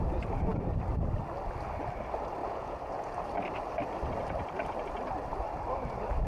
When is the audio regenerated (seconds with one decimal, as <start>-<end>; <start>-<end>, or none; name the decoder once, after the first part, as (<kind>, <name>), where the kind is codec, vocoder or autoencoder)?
2.4-3.2 (vocoder, Vocos)